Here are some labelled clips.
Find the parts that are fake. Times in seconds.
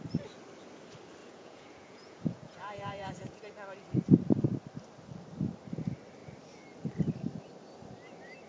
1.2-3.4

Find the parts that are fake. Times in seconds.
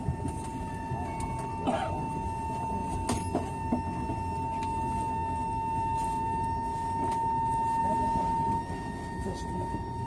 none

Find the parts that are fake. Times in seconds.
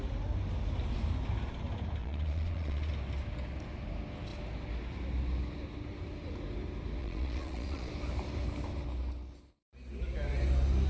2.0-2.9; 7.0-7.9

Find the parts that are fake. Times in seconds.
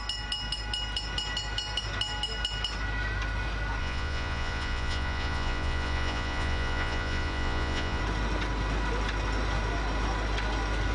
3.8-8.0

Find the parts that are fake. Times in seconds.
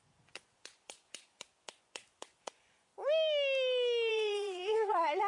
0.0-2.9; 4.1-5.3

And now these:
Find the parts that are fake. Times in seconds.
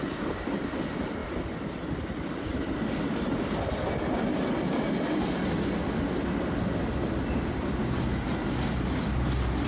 none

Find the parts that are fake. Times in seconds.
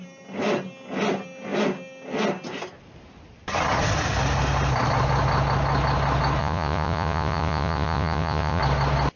6.4-8.6